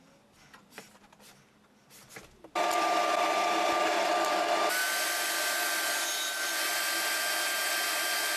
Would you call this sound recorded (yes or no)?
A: yes